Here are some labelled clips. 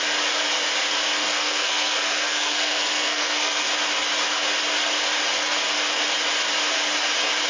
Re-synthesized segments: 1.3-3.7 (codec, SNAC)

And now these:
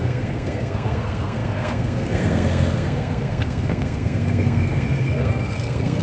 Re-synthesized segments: 0.0-6.0 (codec, SNAC)

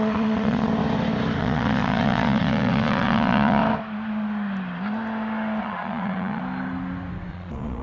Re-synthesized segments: 0.0-0.7 (vocoder, Vocos); 1.4-3.6; 5.6-6.4; 7.3-7.8

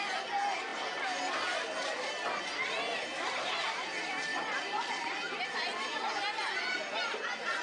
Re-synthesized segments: 4.3-4.8 (vocoder, BigVGAN v2)

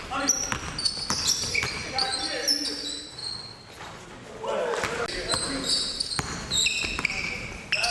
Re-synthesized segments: none

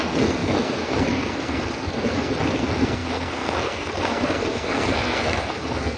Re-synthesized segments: 0.0-6.0 (codec, SNAC)

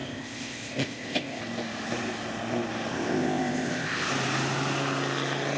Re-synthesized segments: 0.0-1.4 (codec, ZipCodec); 2.9-4.1

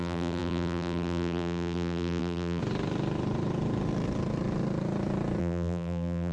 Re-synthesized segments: 0.0-2.6 (vocoder, BigVGAN v2); 5.4-6.3